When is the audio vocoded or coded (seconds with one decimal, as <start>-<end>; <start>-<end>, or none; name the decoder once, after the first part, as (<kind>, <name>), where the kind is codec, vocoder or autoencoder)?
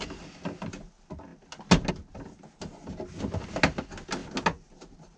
none